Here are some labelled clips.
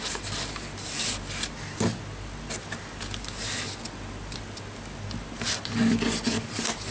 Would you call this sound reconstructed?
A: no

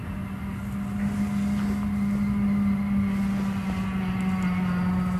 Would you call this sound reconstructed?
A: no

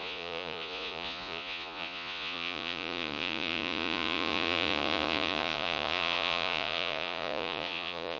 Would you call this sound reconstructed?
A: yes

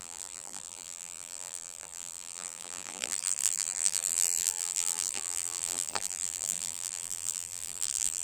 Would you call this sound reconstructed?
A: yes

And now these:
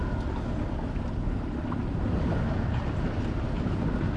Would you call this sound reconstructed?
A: no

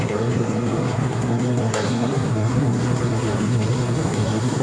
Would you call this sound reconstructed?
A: yes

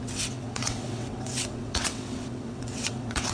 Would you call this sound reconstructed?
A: yes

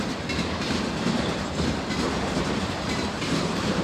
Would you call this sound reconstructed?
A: yes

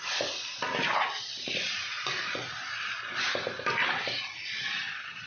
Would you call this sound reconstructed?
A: no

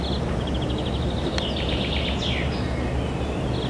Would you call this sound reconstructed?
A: no